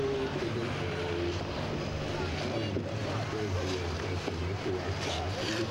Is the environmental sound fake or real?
real